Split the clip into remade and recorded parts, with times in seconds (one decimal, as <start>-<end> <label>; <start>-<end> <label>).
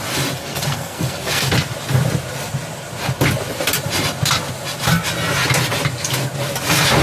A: 0.0-0.4 recorded; 0.4-1.5 remade; 1.5-7.0 recorded